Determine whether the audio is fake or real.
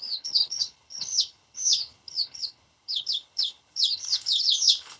fake